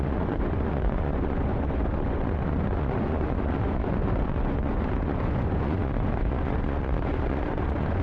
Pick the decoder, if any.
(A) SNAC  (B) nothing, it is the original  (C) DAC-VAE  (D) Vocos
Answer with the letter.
D